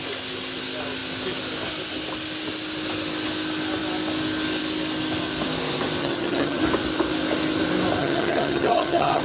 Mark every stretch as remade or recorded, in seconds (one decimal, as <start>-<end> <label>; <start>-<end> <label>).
0.0-6.0 recorded; 6.0-6.6 remade; 6.6-8.0 recorded; 8.0-9.2 remade